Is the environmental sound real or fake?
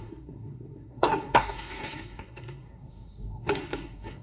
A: fake